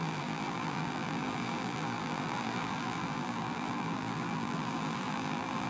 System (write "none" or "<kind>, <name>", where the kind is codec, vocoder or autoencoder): vocoder, BigVGAN v2